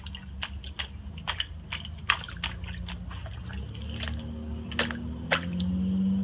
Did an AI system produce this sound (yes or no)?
no